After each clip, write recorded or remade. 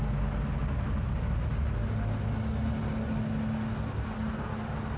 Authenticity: recorded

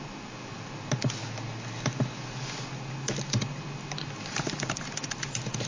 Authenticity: recorded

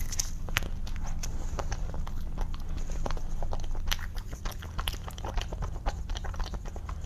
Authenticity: recorded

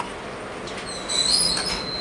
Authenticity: recorded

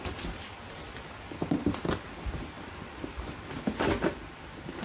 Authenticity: recorded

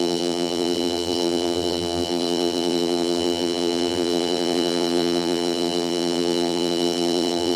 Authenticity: remade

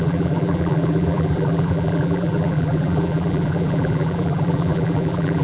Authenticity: remade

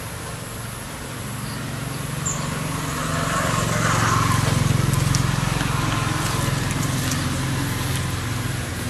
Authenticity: recorded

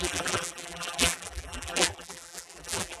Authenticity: remade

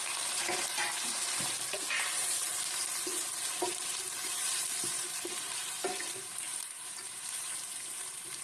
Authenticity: remade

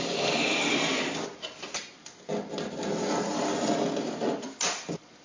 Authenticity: recorded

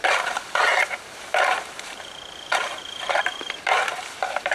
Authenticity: remade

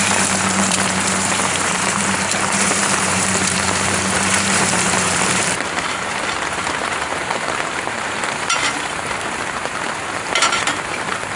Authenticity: remade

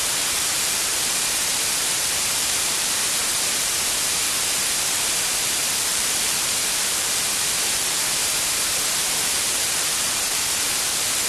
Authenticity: remade